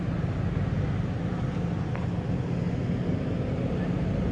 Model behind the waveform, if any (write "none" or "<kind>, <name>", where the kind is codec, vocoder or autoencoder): none